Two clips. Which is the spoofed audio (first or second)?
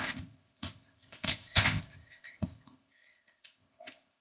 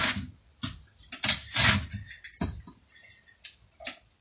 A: first